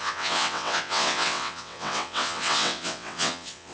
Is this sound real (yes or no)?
no